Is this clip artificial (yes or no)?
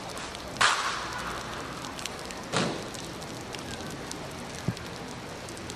no